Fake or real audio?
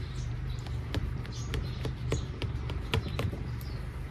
fake